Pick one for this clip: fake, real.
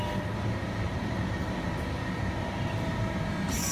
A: real